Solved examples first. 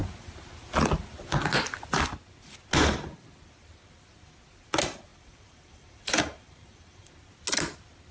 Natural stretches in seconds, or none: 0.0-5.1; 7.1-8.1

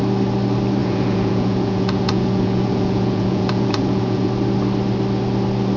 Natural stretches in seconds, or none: 0.0-0.8; 4.3-5.8